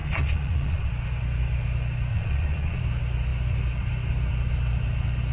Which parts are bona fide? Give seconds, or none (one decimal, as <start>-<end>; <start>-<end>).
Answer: 0.9-2.1; 2.8-5.3